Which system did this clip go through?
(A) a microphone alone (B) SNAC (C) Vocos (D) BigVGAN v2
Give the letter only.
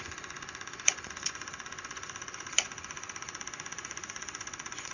C